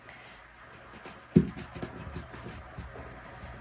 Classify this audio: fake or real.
real